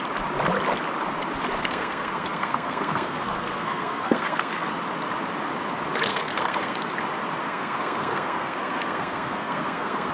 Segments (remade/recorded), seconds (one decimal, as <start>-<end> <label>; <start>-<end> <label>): 0.0-1.6 recorded; 1.6-4.7 remade; 4.7-6.1 recorded; 6.1-6.9 remade; 6.9-7.4 recorded; 7.4-10.1 remade